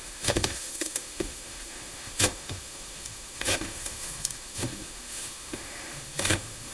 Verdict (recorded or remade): remade